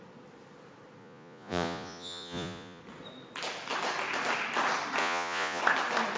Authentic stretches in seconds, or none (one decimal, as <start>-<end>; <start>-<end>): 0.0-1.0; 2.8-5.0; 5.6-6.2